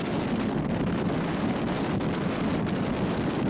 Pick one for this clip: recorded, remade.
recorded